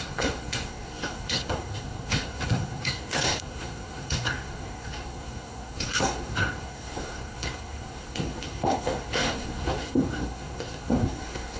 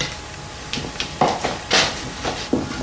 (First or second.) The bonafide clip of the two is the second